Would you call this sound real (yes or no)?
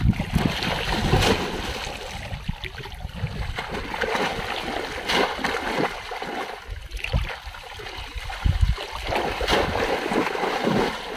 yes